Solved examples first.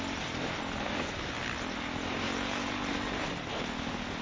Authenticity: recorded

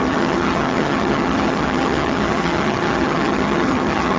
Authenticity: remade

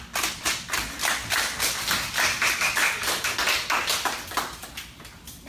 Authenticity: recorded